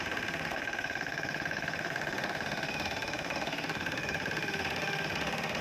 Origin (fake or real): fake